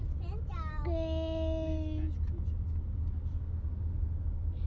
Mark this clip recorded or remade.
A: recorded